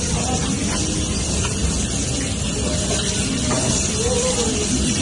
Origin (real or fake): real